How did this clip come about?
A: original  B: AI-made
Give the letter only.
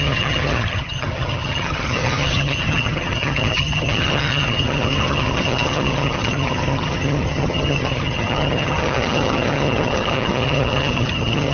B